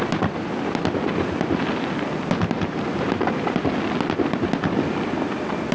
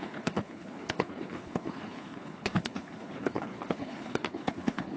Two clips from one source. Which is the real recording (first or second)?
first